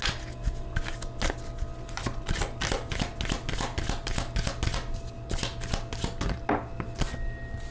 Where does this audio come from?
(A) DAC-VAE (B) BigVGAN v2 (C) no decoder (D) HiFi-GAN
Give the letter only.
C